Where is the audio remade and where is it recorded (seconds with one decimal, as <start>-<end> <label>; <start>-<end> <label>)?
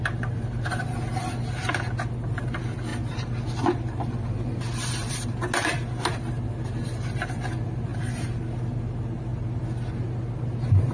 0.0-10.9 recorded